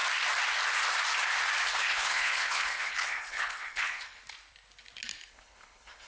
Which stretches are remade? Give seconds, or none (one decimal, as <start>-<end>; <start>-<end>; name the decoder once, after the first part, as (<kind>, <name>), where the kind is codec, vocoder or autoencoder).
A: 1.8-4.2 (codec, HILCodec); 5.3-6.1